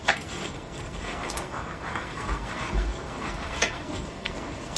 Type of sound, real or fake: fake